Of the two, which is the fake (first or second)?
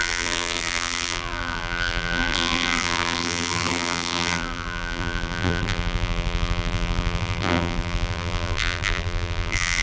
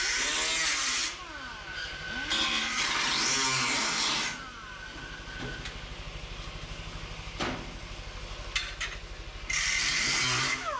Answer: first